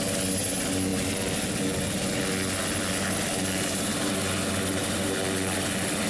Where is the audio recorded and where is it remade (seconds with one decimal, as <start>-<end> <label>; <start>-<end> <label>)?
0.0-6.1 recorded